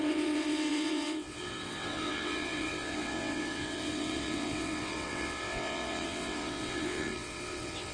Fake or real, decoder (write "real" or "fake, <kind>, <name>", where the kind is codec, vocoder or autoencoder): fake, vocoder, WaveNeXt